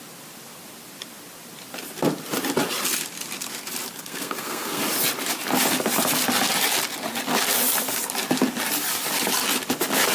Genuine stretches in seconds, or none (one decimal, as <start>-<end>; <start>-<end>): 0.0-4.0; 4.8-10.1